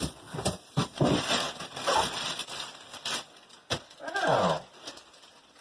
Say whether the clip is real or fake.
real